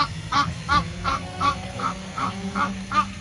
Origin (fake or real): fake